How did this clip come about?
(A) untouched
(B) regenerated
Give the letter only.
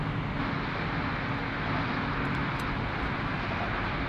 A